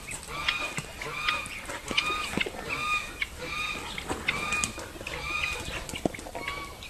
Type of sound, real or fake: real